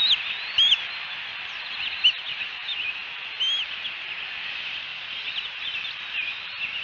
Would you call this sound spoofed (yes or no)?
no